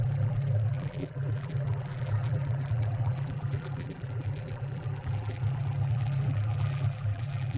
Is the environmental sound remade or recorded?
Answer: remade